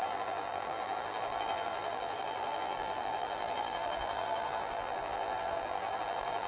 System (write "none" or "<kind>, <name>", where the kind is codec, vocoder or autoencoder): vocoder, BigVGAN v2